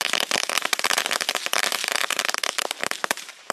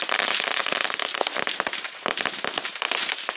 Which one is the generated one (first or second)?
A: first